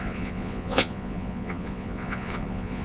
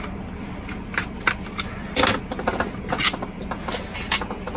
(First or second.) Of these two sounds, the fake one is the first